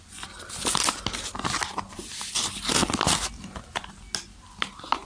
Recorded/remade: recorded